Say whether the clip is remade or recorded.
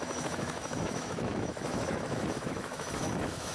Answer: remade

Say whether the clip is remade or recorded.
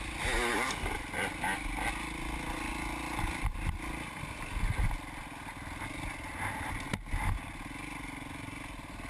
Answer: recorded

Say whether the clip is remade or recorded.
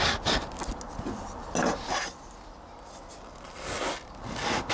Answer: recorded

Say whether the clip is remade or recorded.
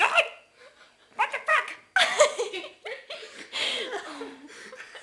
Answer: recorded